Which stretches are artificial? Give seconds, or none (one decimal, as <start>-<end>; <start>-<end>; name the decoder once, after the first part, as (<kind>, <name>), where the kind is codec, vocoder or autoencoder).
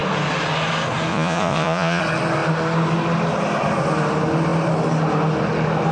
1.1-2.0 (vocoder, Vocos)